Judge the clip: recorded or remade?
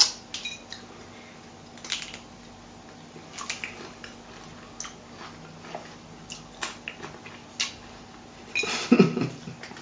recorded